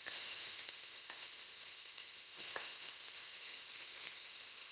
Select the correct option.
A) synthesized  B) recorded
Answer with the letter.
A